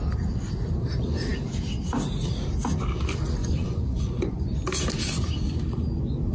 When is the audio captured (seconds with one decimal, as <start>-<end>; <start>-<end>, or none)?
0.0-3.4; 4.4-6.3